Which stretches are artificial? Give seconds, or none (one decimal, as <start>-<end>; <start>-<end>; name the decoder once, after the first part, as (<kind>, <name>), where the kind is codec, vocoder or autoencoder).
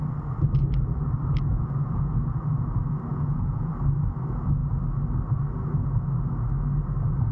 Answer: 1.5-2.2 (vocoder, Vocos); 3.1-3.7